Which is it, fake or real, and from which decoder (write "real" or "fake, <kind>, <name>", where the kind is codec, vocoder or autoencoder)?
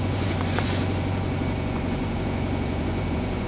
fake, vocoder, Vocos